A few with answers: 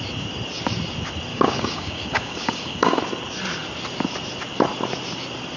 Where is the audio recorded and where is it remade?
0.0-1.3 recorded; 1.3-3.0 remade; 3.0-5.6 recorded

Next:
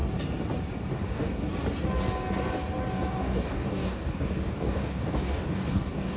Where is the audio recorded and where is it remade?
0.0-0.9 recorded; 0.9-1.4 remade; 1.4-3.1 recorded; 3.1-6.2 remade

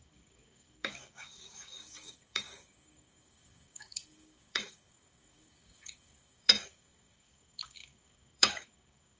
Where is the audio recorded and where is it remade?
0.0-9.2 remade